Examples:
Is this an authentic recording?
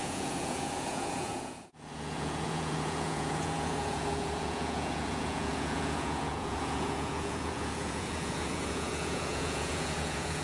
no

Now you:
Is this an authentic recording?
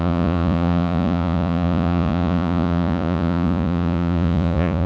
no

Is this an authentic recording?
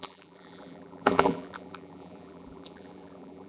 no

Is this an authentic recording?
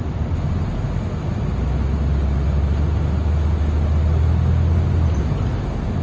yes